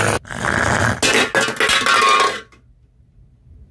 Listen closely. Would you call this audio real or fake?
real